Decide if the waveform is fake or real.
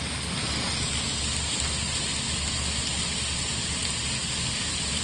real